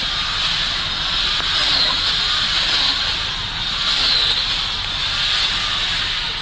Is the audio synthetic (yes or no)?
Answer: no